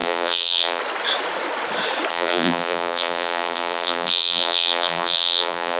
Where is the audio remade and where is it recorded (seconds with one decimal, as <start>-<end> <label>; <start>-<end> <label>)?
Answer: 0.0-0.8 remade; 0.8-2.1 recorded; 2.1-5.8 remade